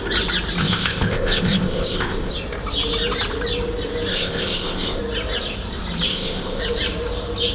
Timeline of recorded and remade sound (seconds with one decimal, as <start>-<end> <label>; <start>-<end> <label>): 0.0-0.6 recorded; 0.6-2.3 remade; 2.3-4.1 recorded; 4.1-5.0 remade; 5.0-6.1 recorded; 6.1-6.6 remade; 6.6-7.5 recorded